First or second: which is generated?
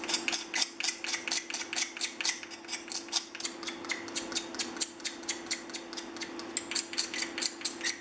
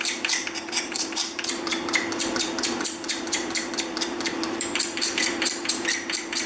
second